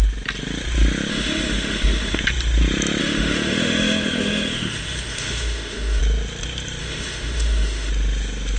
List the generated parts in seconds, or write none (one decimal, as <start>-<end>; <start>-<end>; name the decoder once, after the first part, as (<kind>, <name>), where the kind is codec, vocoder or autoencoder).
1.1-2.2 (autoencoder, DAC-VAE); 3.0-6.0; 6.8-7.9